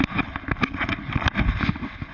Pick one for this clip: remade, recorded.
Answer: recorded